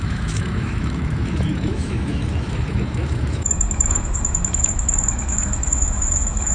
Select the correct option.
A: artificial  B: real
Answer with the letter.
A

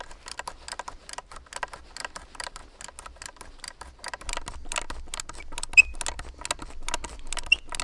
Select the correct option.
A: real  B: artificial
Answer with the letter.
A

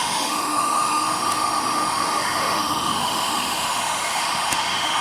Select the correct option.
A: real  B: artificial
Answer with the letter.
B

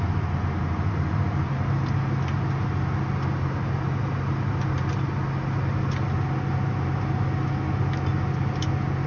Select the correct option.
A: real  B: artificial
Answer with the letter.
A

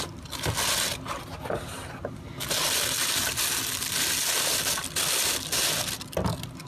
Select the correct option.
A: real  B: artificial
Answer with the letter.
A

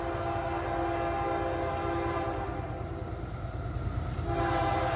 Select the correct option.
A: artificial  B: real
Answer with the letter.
B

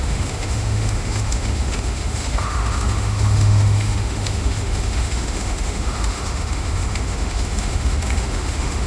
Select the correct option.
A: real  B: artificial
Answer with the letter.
B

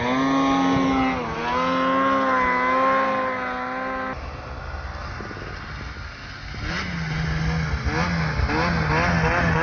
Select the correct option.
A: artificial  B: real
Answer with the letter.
B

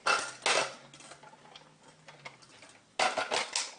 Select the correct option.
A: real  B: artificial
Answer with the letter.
A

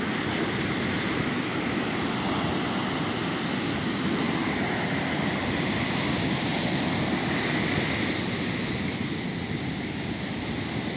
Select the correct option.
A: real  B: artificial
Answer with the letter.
A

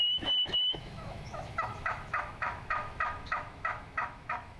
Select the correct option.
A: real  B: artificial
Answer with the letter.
B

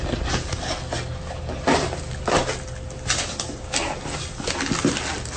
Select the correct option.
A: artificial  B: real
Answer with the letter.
B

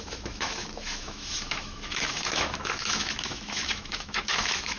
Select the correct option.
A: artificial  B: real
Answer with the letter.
A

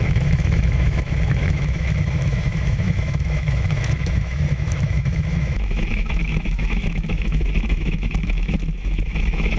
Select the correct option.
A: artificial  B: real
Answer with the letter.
A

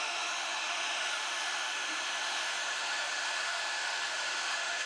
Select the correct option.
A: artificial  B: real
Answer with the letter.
A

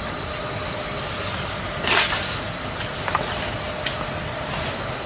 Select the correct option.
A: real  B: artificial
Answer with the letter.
A